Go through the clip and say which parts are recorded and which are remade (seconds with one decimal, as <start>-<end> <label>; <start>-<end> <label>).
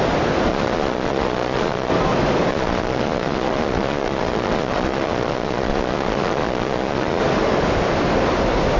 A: 0.0-0.5 recorded; 0.5-1.9 remade; 1.9-2.5 recorded; 2.5-7.2 remade; 7.2-8.8 recorded